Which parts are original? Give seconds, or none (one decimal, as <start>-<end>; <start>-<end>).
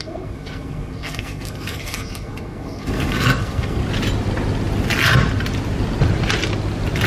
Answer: 3.8-7.1